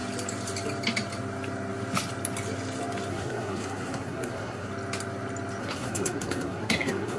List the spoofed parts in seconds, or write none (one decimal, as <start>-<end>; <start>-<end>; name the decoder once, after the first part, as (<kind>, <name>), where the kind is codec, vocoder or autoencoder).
3.1-4.7 (codec, SNAC); 5.6-7.2